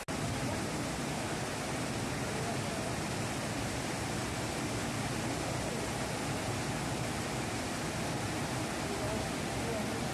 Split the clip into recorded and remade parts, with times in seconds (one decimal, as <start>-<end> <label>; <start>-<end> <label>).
0.0-10.1 recorded